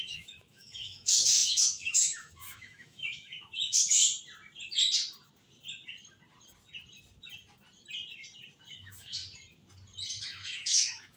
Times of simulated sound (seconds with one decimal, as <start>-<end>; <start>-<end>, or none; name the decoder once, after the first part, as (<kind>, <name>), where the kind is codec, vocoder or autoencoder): 0.0-4.0 (autoencoder, DAC-VAE); 8.7-9.2; 10.2-11.2